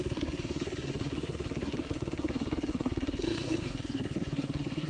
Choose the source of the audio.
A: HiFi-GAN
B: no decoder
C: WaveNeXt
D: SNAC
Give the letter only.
D